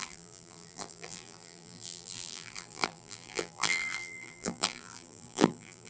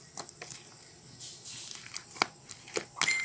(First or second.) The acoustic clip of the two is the second